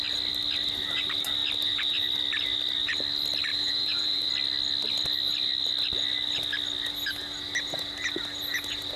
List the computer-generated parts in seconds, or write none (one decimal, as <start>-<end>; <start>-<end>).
3.5-4.3